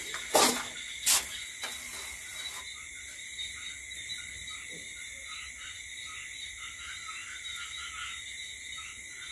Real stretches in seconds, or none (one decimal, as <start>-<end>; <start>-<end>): 0.0-9.3